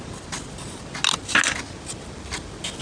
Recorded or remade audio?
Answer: recorded